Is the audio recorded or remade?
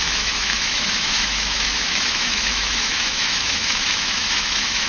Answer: remade